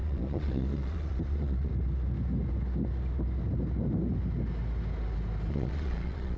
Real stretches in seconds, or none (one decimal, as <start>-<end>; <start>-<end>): 1.7-5.5